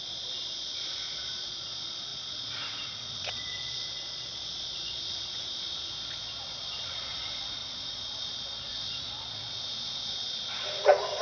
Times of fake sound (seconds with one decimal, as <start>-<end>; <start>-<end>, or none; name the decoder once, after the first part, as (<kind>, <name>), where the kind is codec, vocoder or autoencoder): 0.0-11.2 (vocoder, Vocos)